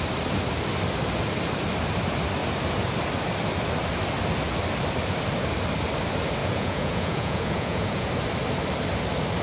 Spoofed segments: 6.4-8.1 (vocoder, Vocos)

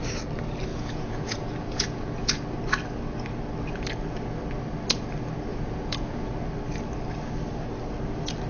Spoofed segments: 0.7-2.4 (vocoder, Vocos); 5.5-6.3

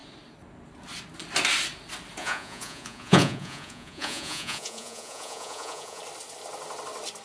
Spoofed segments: 2.2-6.0 (vocoder, Vocos)

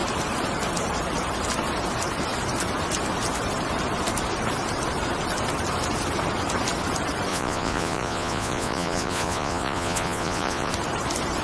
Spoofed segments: 7.3-10.7 (vocoder, Vocos)

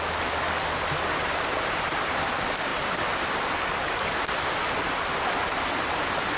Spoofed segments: none

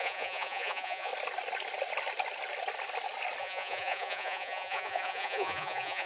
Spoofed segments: 0.0-1.1 (vocoder, Vocos); 3.4-6.1

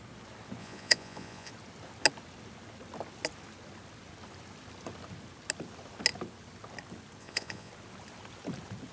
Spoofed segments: 0.6-1.5 (vocoder, Vocos); 7.2-7.7

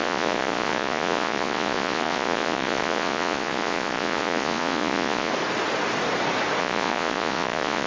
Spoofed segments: 0.0-5.3 (vocoder, Vocos); 6.6-7.9